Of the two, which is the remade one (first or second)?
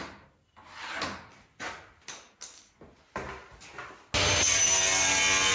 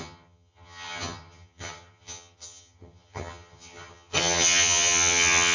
second